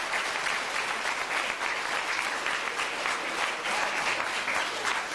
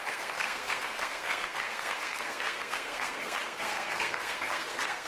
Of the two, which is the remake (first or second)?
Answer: second